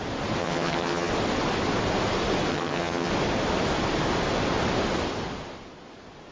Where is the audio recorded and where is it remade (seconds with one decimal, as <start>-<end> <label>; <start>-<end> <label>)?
0.0-0.4 recorded; 0.4-1.1 remade; 1.1-2.5 recorded; 2.5-3.1 remade; 3.1-6.3 recorded